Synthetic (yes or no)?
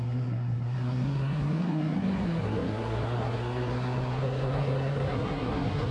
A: yes